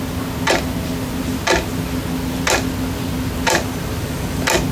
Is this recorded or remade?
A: recorded